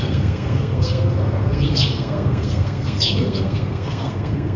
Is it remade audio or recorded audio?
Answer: remade